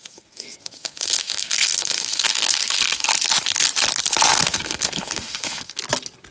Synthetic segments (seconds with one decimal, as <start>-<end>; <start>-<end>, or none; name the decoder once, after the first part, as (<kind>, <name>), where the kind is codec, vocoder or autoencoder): 0.0-3.1 (codec, SNAC); 4.3-5.8